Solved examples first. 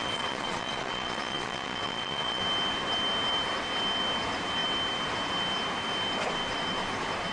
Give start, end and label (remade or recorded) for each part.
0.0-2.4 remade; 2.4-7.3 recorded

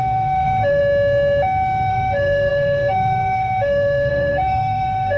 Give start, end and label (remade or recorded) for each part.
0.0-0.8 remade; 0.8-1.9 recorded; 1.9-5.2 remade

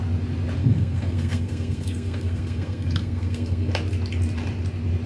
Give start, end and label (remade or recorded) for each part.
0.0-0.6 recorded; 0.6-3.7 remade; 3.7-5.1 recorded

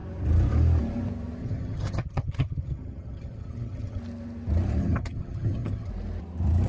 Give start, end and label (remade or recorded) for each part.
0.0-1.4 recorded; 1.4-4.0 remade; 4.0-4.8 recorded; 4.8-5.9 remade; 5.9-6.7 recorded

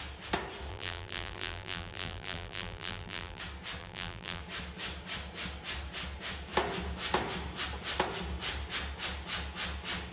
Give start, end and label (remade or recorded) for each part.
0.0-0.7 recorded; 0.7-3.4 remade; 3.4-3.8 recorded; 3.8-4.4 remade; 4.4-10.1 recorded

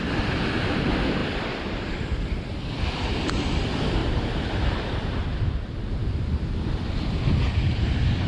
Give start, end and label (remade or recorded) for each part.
0.0-1.2 recorded; 1.2-2.8 remade; 2.8-4.0 recorded; 4.0-5.2 remade; 5.2-6.0 recorded; 6.0-7.2 remade; 7.2-8.3 recorded